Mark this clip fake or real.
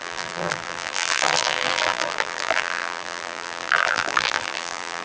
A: fake